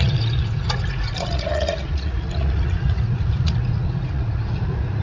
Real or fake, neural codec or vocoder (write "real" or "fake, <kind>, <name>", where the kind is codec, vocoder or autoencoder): fake, vocoder, Vocos